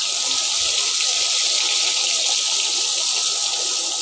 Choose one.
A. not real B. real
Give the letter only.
B